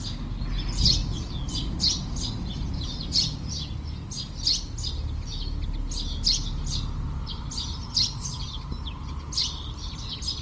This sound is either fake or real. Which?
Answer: real